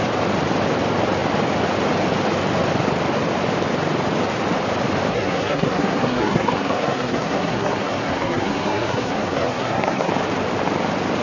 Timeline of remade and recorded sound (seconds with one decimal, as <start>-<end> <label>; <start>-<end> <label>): 0.0-5.1 recorded; 5.1-10.1 remade; 10.1-11.2 recorded